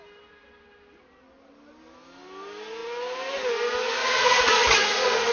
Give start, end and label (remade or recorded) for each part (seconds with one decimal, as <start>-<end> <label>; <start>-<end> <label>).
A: 0.0-4.0 recorded; 4.0-5.3 remade